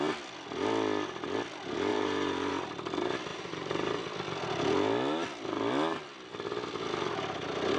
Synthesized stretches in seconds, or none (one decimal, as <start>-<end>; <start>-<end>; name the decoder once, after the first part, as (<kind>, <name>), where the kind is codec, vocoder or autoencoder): 1.9-2.5 (vocoder, BigVGAN v2); 3.3-4.0